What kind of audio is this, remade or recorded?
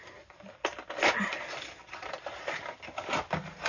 recorded